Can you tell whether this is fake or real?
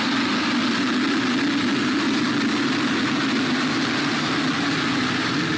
real